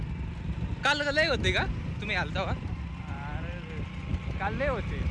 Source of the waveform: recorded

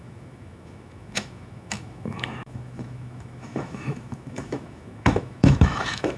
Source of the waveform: remade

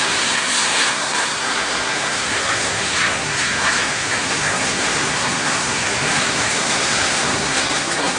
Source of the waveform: remade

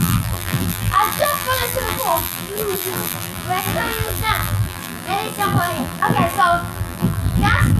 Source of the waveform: remade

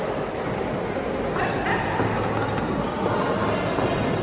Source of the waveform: recorded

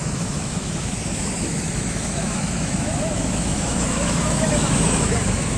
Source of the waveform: remade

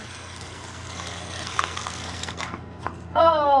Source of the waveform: remade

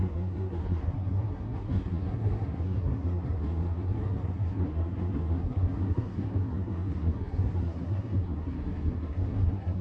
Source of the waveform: remade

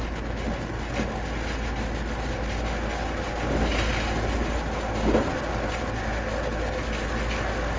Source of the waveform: recorded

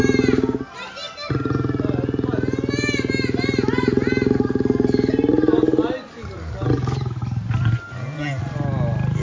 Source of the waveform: recorded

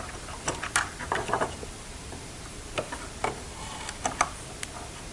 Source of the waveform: recorded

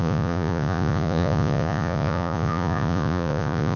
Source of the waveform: remade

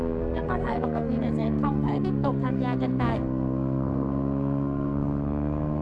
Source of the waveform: remade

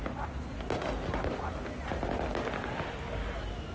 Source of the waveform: recorded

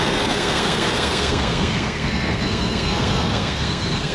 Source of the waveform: remade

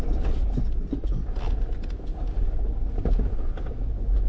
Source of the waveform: recorded